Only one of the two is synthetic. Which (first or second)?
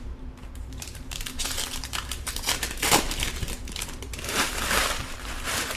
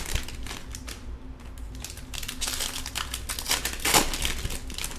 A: first